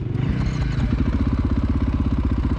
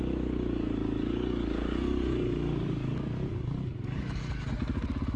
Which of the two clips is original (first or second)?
first